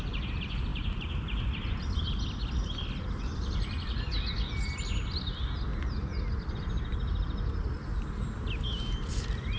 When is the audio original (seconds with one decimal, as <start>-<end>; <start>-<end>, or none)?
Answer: 0.0-9.6